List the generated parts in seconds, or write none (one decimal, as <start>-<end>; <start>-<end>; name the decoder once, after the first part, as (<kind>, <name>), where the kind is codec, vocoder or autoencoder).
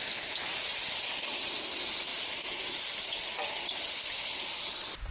none